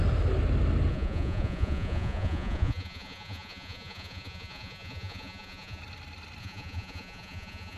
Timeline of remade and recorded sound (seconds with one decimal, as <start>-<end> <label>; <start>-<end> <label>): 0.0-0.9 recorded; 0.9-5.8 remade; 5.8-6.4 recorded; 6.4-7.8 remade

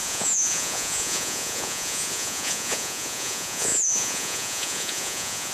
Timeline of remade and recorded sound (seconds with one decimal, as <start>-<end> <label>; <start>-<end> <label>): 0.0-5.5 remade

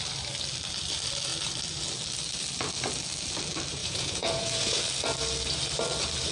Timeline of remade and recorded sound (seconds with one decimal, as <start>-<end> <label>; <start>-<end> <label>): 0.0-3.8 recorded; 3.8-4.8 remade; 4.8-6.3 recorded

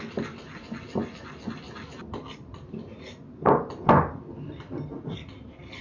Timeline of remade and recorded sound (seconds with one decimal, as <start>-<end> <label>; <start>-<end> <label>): 0.0-5.8 recorded